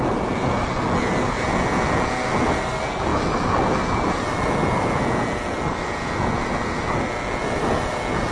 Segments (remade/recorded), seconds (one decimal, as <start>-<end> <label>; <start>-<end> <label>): 0.0-8.3 recorded